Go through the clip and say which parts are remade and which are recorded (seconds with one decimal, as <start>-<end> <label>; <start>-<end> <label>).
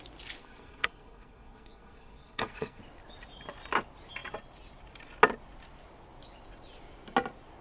0.0-0.4 recorded; 0.4-2.8 remade; 2.8-7.6 recorded